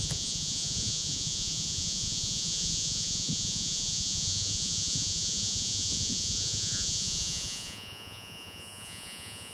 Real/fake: fake